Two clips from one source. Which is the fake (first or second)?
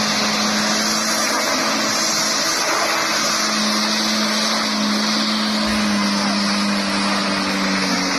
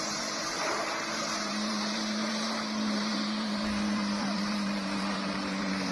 second